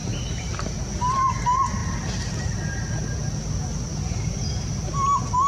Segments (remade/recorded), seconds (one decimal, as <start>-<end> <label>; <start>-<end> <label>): 0.0-0.8 remade; 0.8-1.8 recorded; 1.8-2.4 remade; 2.4-3.9 recorded; 3.9-4.9 remade; 4.9-5.5 recorded